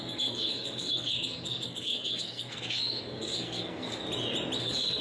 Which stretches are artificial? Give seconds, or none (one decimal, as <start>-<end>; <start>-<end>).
0.0-4.0; 4.6-5.0